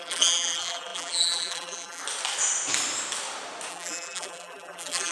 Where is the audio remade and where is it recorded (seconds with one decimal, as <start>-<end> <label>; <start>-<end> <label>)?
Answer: 0.0-2.0 remade; 2.0-3.7 recorded; 3.7-5.1 remade